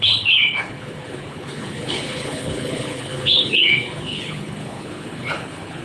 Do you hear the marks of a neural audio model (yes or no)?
yes